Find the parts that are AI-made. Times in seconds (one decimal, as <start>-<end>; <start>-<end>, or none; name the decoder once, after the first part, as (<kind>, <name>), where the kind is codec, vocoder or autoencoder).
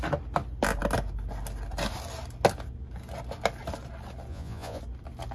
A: 4.3-4.8 (vocoder, Vocos)